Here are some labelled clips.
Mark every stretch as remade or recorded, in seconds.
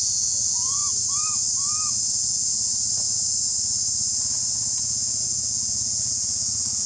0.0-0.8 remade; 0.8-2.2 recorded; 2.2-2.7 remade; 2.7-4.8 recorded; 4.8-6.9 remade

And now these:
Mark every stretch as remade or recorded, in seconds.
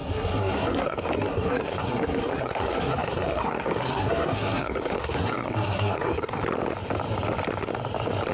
0.0-6.4 remade; 6.4-8.3 recorded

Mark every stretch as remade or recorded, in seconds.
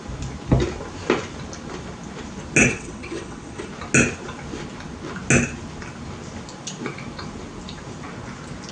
0.0-2.6 recorded; 2.6-3.7 remade; 3.7-8.7 recorded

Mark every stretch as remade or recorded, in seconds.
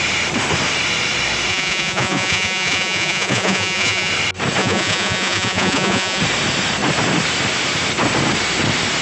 0.0-1.5 recorded; 1.5-4.1 remade; 4.1-4.6 recorded; 4.6-6.2 remade; 6.2-9.0 recorded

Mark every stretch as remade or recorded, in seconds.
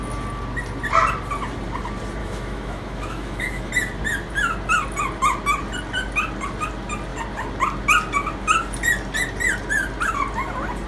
0.0-2.2 recorded; 2.2-3.7 remade; 3.7-10.9 recorded